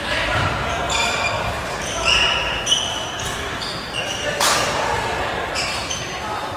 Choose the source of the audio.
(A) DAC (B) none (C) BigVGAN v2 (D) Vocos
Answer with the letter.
C